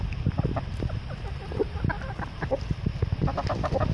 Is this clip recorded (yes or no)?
no